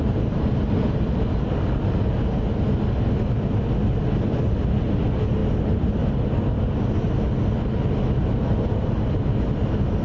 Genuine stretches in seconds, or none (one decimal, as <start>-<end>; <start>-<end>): 0.0-10.0